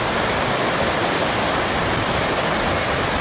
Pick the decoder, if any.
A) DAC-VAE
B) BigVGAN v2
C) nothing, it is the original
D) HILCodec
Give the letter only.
C